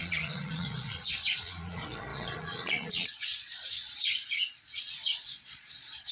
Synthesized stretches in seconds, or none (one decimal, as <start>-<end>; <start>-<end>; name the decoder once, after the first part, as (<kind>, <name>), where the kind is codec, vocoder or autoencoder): 0.0-6.1 (vocoder, Vocos)